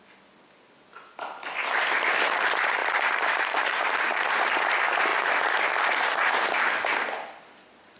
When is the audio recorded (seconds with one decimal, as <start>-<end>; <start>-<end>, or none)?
0.0-2.8; 4.5-8.0

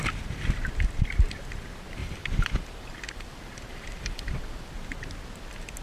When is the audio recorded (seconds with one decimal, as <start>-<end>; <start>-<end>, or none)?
0.0-2.0; 4.7-5.8

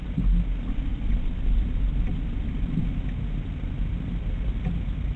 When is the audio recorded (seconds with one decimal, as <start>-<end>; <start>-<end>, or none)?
0.0-0.9; 2.2-5.2

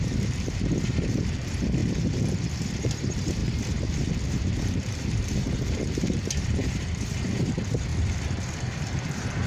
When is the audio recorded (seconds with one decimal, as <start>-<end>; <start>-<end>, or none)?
1.8-3.0; 3.4-4.3; 7.9-8.6

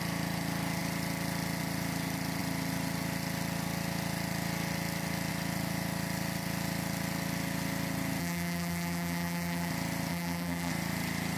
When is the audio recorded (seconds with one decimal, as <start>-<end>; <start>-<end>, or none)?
0.0-8.2; 9.7-10.1; 10.7-11.4